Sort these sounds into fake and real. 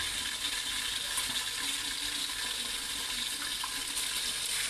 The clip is real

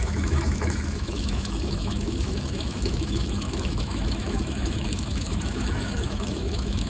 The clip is fake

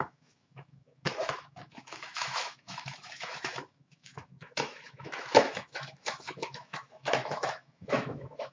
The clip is fake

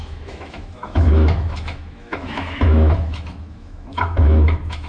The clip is fake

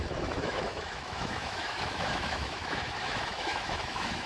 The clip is fake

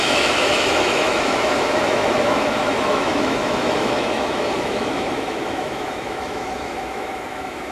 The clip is fake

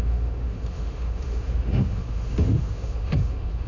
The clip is fake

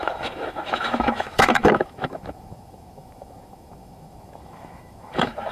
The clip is fake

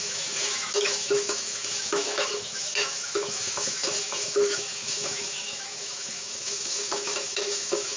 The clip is fake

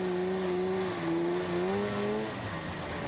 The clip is real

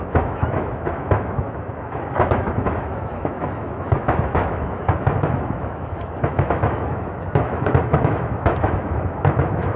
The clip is fake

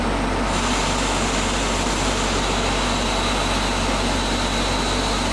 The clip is real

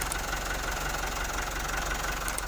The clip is real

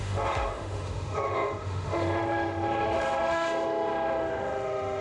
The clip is fake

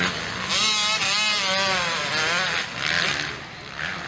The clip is real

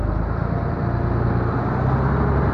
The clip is real